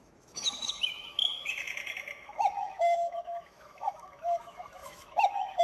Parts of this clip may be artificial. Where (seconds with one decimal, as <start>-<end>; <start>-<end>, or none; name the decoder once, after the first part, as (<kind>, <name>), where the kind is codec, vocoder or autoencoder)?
0.0-5.6 (autoencoder, DAC-VAE)